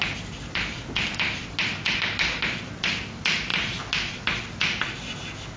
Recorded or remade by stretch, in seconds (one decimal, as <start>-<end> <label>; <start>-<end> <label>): 0.0-5.6 recorded